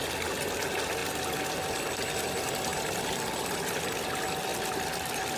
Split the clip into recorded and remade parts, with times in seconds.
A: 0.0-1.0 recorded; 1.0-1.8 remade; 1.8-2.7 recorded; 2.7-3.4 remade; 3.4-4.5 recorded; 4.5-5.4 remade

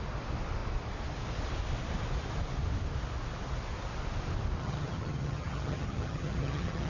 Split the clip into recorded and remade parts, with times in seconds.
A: 0.0-4.6 recorded; 4.6-6.9 remade